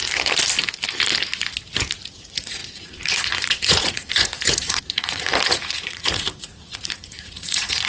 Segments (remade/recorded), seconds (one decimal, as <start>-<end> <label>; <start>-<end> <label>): 0.0-2.1 recorded; 2.1-7.9 remade

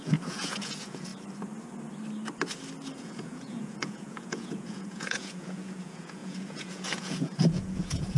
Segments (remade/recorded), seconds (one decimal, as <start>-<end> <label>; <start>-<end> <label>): 0.0-1.1 remade; 1.1-3.0 recorded; 3.0-8.2 remade